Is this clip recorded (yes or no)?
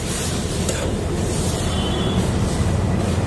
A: no